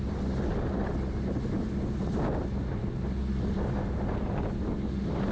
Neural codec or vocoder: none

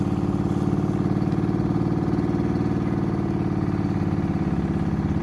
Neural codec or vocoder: none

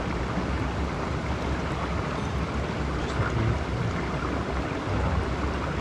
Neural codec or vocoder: none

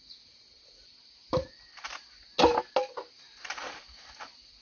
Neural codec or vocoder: none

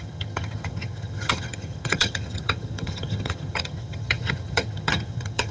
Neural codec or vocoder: vocoder, HiFi-GAN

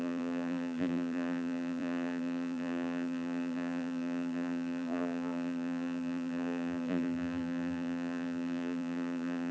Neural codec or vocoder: vocoder, BigVGAN v2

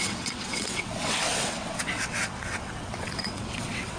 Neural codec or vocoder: vocoder, WaveNeXt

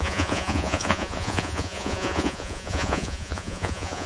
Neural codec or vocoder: vocoder, Vocos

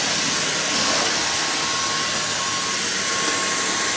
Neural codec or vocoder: none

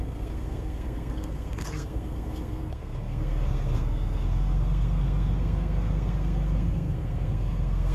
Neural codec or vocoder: codec, SNAC